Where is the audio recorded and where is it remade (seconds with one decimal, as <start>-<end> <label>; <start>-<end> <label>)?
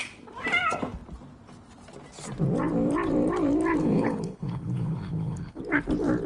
0.0-3.8 recorded; 3.8-5.6 remade; 5.6-6.3 recorded